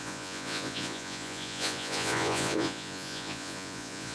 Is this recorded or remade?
remade